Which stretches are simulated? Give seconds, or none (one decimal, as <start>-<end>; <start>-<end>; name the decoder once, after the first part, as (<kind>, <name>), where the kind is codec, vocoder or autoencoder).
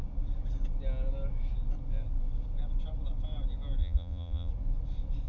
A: 3.8-4.5 (vocoder, Vocos)